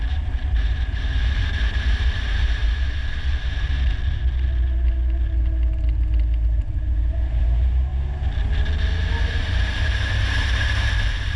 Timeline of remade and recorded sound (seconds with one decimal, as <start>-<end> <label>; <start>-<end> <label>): 0.0-2.6 remade; 2.6-7.4 recorded; 7.4-7.9 remade; 7.9-9.1 recorded; 9.1-11.4 remade